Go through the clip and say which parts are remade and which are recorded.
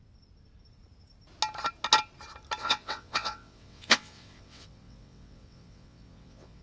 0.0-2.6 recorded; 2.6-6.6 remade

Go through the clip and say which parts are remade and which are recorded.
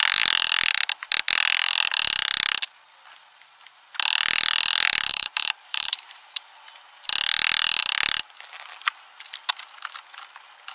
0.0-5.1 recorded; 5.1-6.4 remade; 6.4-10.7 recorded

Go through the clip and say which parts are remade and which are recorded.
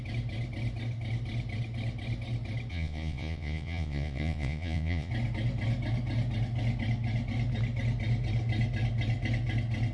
0.0-2.7 recorded; 2.7-5.1 remade; 5.1-9.9 recorded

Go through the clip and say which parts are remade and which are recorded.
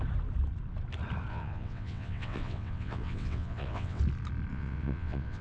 0.0-1.3 recorded; 1.3-4.0 remade; 4.0-4.5 recorded; 4.5-5.4 remade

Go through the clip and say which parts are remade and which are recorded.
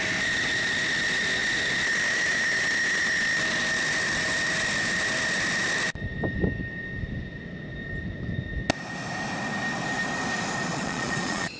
0.0-10.7 recorded; 10.7-11.6 remade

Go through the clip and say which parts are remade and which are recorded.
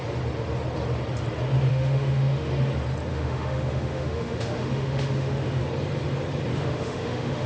0.0-1.7 recorded; 1.7-2.5 remade; 2.5-3.1 recorded; 3.1-5.6 remade; 5.6-6.5 recorded; 6.5-7.5 remade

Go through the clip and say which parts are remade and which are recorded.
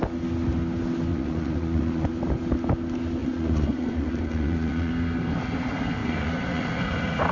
0.0-1.1 recorded; 1.1-2.1 remade; 2.1-3.2 recorded; 3.2-4.9 remade; 4.9-6.0 recorded; 6.0-6.6 remade; 6.6-7.3 recorded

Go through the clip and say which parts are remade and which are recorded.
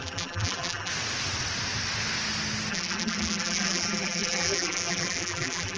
0.0-0.9 remade; 0.9-2.7 recorded; 2.7-5.8 remade